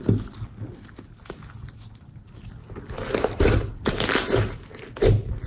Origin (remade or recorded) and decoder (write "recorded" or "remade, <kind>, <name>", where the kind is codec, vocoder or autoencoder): recorded